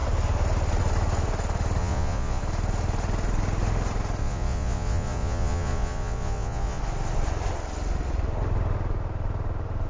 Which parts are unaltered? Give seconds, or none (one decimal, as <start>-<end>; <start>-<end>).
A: 0.0-1.8; 2.4-4.2; 6.8-9.9